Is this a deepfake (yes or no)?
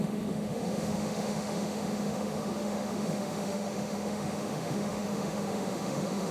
yes